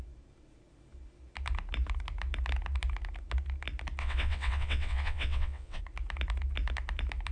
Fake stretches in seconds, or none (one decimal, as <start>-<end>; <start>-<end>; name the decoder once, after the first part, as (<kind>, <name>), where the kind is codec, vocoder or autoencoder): 4.0-5.8 (vocoder, WaveNeXt)